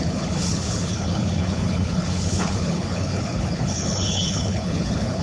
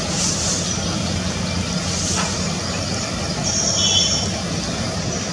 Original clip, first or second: second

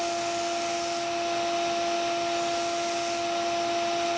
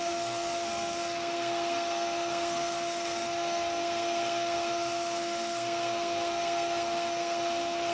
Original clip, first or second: first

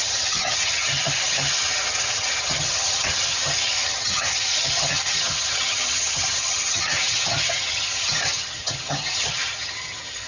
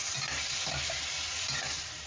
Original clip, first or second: second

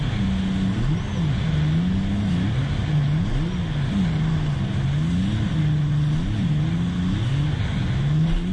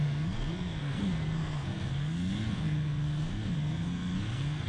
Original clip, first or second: first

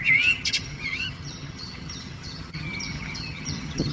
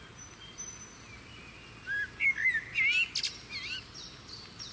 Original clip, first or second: second